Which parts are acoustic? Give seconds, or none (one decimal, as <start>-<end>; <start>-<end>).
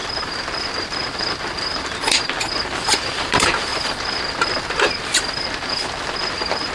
0.0-3.1; 3.7-6.3